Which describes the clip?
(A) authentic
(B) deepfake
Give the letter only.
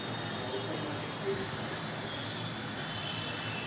A